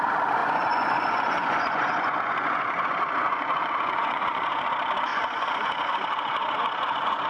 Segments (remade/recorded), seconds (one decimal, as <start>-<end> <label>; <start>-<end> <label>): 0.0-0.4 recorded; 0.4-4.6 remade; 4.6-5.1 recorded; 5.1-7.3 remade